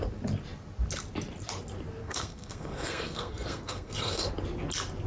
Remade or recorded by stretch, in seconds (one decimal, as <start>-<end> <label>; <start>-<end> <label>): 0.0-2.0 recorded; 2.0-4.3 remade; 4.3-5.1 recorded